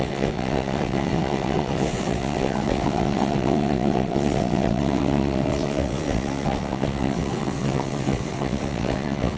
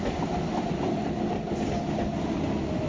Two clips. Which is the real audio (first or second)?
second